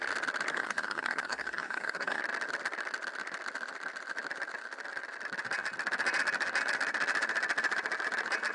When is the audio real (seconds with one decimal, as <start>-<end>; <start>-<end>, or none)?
0.0-0.5; 2.2-8.5